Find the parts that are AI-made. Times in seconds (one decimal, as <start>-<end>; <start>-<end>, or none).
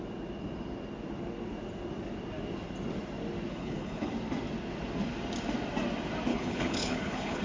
3.5-4.1; 6.3-7.4